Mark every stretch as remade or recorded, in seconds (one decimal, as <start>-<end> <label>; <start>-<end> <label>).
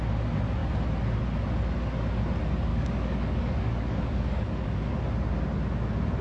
0.0-2.7 recorded; 2.7-4.9 remade; 4.9-6.2 recorded